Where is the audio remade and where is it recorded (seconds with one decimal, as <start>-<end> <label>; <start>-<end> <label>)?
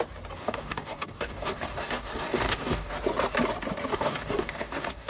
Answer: 0.0-0.4 recorded; 0.4-2.9 remade; 2.9-3.9 recorded; 3.9-5.1 remade